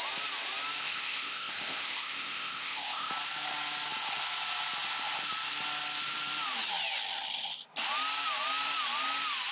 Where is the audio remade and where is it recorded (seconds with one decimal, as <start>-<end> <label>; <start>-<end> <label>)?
0.0-0.8 recorded; 0.8-3.1 remade; 3.1-9.5 recorded